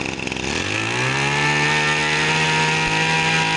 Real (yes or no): yes